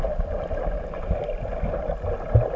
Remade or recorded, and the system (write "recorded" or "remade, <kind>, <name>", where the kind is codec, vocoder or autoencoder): recorded